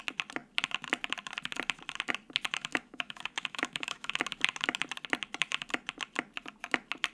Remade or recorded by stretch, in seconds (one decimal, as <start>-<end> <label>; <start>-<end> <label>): 0.0-2.7 recorded; 2.7-4.2 remade; 4.2-7.1 recorded